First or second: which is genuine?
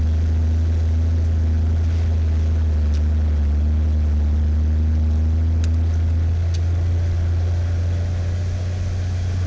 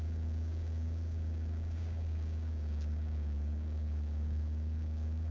first